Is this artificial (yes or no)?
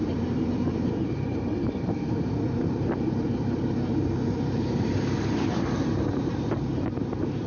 yes